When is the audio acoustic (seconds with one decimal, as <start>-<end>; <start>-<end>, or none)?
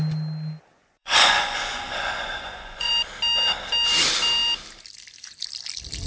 0.0-0.7; 2.9-6.1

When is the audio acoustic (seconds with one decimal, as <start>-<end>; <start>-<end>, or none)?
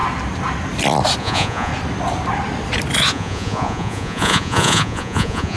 0.0-1.2; 1.7-3.1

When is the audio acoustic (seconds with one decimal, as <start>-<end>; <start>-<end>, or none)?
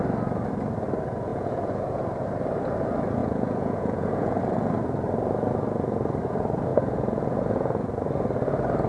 0.0-1.3; 2.0-3.2; 4.4-6.7; 7.9-8.9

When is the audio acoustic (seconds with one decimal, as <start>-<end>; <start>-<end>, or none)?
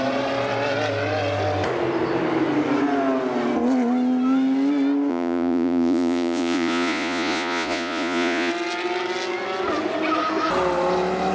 0.0-5.1; 8.5-11.3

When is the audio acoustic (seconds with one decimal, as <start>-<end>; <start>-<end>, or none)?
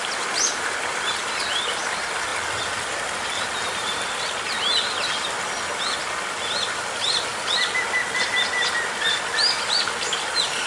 0.0-10.7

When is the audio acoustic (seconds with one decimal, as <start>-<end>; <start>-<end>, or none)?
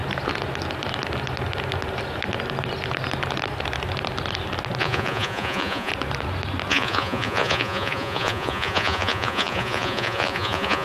0.0-4.8; 5.9-6.7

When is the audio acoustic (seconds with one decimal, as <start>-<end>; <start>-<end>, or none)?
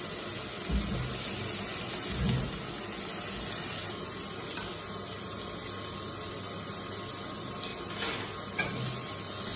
0.0-9.6